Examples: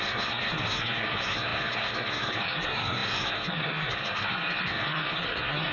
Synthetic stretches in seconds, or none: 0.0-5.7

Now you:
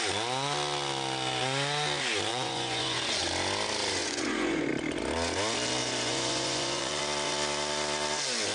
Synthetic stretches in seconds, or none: 2.3-3.2; 4.0-4.7; 5.8-7.0

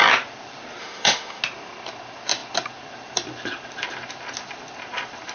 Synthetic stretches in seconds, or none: 0.8-1.4